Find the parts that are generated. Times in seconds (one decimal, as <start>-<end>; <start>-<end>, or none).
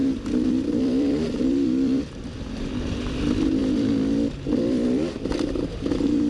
0.0-6.3